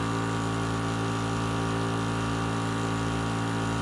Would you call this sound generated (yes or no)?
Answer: no